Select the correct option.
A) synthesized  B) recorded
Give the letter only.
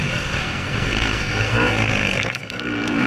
A